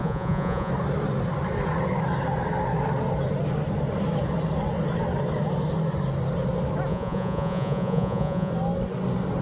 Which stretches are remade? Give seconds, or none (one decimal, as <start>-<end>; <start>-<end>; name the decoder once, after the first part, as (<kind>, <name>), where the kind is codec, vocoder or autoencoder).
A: 0.0-0.7 (vocoder, Vocos); 6.9-8.5